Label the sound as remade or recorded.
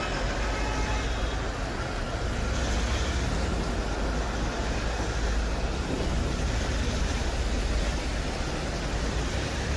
recorded